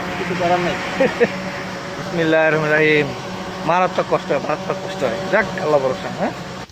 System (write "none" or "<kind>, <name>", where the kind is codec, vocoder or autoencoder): autoencoder, DAC-VAE